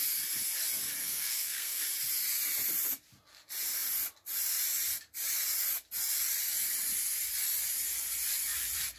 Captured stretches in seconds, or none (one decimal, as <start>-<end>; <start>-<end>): 0.0-1.0; 1.8-9.0